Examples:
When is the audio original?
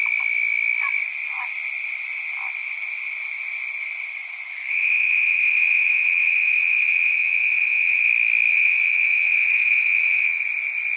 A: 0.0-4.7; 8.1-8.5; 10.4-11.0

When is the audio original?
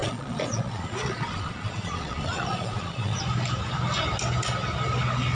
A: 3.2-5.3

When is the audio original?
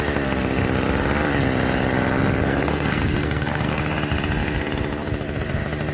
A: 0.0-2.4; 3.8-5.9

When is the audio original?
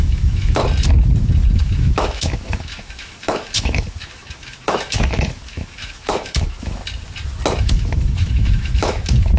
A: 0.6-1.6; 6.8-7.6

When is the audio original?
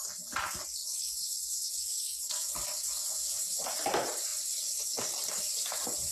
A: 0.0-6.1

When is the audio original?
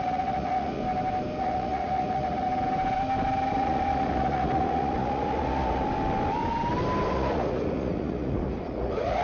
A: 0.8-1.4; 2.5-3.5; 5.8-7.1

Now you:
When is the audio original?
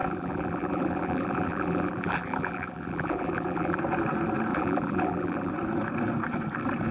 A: 3.8-4.5; 5.5-6.9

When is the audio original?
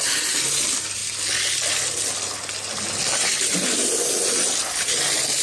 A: 0.0-5.4